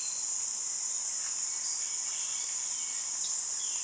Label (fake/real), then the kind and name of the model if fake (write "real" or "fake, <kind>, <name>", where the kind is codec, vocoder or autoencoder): real